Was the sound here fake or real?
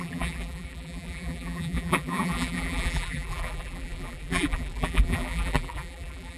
fake